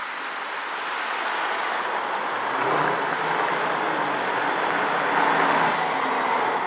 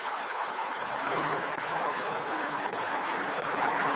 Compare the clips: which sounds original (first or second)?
first